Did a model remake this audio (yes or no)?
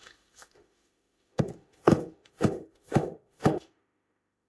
yes